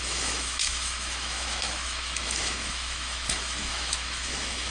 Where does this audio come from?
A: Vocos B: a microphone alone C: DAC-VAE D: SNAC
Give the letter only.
C